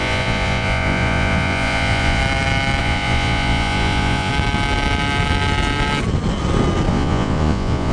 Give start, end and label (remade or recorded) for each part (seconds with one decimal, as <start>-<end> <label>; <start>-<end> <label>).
0.0-2.2 remade; 2.2-2.8 recorded; 2.8-4.3 remade; 4.3-6.9 recorded; 6.9-7.9 remade